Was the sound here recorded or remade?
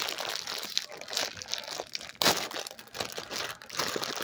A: recorded